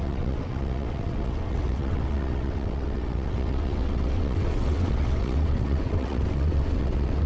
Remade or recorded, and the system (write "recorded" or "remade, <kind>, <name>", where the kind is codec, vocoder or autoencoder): remade, vocoder, WaveNeXt